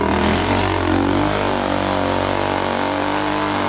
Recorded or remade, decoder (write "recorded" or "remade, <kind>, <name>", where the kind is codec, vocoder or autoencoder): recorded